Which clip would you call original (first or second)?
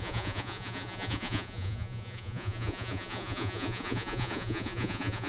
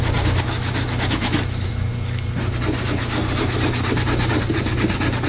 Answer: second